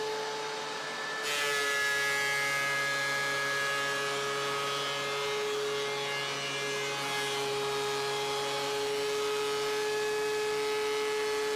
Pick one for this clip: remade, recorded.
recorded